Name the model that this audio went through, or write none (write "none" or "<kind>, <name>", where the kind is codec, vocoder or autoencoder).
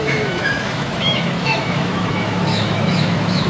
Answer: autoencoder, DAC-VAE